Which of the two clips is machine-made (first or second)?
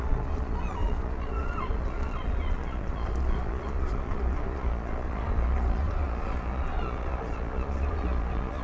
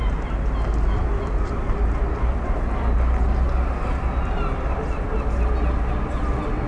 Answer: first